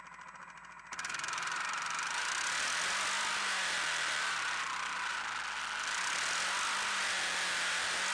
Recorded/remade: recorded